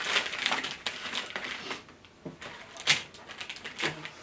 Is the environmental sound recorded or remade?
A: recorded